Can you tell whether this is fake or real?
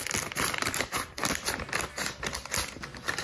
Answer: real